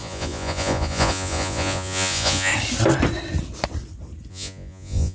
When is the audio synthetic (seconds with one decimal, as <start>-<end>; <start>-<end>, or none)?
0.0-2.5; 4.3-5.1